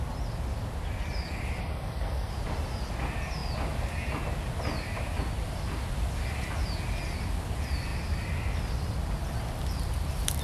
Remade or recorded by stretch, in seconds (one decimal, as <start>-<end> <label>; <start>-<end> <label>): 0.0-1.6 recorded; 1.6-2.3 remade; 2.3-10.4 recorded